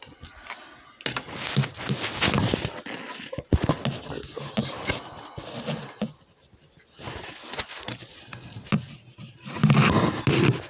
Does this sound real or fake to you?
real